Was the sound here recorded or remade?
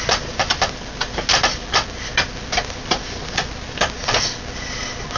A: recorded